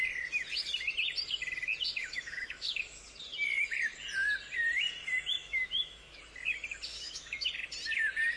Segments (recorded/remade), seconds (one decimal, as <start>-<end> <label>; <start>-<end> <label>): 0.0-2.0 recorded; 2.0-3.1 remade; 3.1-5.4 recorded; 5.4-6.2 remade; 6.2-6.9 recorded; 6.9-7.5 remade; 7.5-8.4 recorded

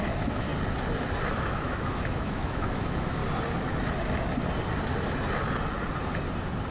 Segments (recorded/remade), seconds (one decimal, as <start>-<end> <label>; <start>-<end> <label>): 0.0-0.5 remade; 0.5-1.3 recorded; 1.3-3.2 remade; 3.2-6.7 recorded

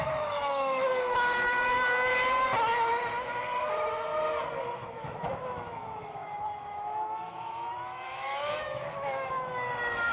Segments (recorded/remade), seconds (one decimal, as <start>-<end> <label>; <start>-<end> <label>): 0.0-2.1 remade; 2.1-4.6 recorded; 4.6-10.1 remade